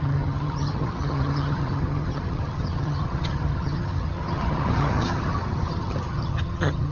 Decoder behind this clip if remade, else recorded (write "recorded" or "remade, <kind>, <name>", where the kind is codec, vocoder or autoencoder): remade, vocoder, HiFi-GAN